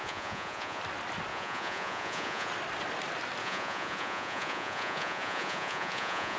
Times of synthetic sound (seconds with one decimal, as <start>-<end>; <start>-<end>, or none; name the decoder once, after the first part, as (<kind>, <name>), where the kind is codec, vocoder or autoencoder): 0.0-0.8 (vocoder, Vocos); 1.3-2.5; 3.4-6.4